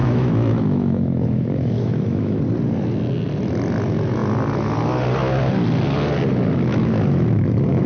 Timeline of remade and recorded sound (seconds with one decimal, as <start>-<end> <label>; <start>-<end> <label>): 0.0-2.4 remade; 2.4-6.7 recorded; 6.7-7.9 remade